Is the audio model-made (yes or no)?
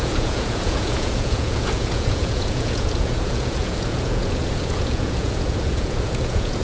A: yes